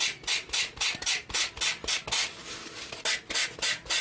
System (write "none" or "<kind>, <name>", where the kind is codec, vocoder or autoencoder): none